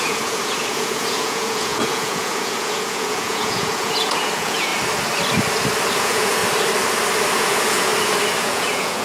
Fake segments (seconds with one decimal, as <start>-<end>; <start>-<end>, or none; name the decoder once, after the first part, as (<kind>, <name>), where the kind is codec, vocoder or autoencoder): 0.0-4.7 (vocoder, Vocos); 6.0-6.4; 7.3-7.9; 8.4-9.0